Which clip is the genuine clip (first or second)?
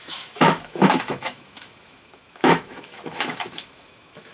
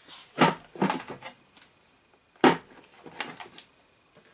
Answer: second